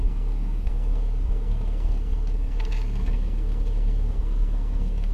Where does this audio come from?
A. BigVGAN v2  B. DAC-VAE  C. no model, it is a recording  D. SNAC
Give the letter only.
D